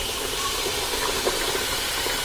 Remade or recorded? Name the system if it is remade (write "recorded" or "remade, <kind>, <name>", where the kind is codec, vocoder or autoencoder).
remade, vocoder, BigVGAN v2